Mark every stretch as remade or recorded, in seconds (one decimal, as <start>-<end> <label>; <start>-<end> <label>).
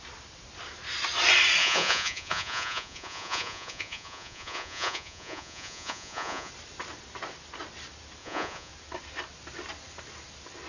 0.0-1.6 recorded; 1.6-6.5 remade; 6.5-8.2 recorded; 8.2-8.7 remade; 8.7-10.7 recorded